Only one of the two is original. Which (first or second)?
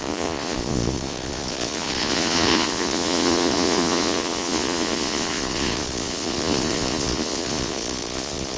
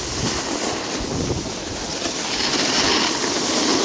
second